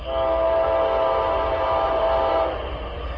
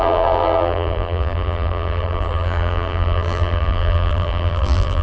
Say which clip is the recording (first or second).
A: first